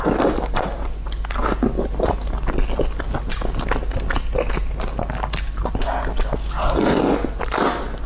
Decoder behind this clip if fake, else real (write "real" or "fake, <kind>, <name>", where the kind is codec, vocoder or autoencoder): real